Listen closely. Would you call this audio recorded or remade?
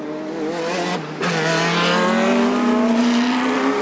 recorded